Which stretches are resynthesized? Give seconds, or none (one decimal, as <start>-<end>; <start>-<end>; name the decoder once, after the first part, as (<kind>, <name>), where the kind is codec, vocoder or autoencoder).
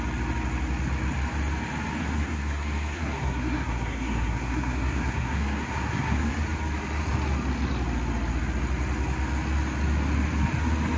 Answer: 2.0-6.3 (codec, SNAC)